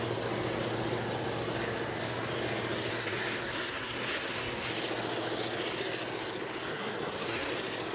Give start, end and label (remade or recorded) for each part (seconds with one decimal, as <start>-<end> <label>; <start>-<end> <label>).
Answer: 0.0-2.9 recorded; 2.9-4.7 remade; 4.7-6.7 recorded; 6.7-7.5 remade; 7.5-7.9 recorded